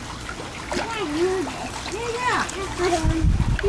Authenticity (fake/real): real